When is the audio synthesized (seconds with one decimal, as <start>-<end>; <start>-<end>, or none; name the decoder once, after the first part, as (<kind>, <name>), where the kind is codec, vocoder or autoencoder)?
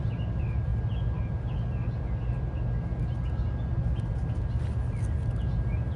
none